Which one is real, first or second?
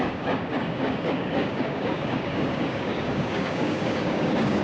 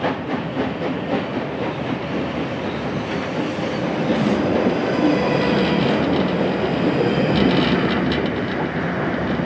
second